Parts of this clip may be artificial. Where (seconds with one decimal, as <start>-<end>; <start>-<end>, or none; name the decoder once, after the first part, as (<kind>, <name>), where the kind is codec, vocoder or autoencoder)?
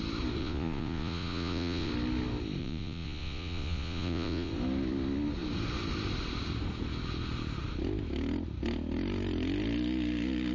0.4-1.9 (vocoder, Vocos); 2.6-4.5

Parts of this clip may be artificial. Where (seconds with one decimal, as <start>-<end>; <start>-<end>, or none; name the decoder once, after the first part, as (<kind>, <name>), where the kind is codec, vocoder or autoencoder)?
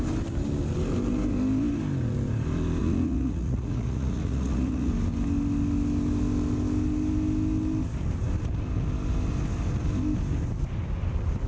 2.8-4.9 (vocoder, Vocos)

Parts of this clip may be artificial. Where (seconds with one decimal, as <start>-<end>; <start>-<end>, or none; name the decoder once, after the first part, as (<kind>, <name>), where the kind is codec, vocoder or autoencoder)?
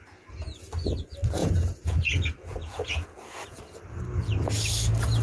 1.4-3.6 (vocoder, Vocos)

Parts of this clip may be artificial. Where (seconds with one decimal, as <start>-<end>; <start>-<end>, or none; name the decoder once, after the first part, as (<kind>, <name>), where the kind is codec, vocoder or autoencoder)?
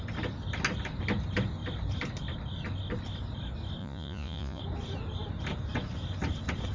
3.8-4.6 (vocoder, Vocos)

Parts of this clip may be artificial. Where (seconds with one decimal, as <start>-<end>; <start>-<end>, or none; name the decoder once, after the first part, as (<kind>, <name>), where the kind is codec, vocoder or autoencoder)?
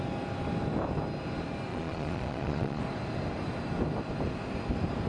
1.7-2.8 (vocoder, Vocos)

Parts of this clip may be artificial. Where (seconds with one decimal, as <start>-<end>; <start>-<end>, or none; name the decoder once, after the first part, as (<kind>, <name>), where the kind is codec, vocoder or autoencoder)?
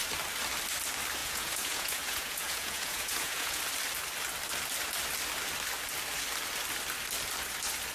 1.2-3.6 (vocoder, Vocos)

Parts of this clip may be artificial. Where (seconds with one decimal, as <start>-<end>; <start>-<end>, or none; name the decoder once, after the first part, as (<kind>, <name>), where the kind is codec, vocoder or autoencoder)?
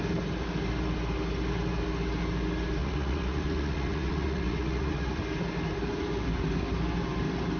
2.8-5.2 (vocoder, Vocos)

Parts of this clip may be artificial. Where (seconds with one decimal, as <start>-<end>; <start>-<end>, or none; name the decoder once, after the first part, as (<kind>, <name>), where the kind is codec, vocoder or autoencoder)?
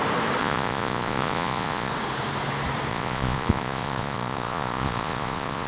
0.4-1.9 (vocoder, Vocos); 2.9-5.7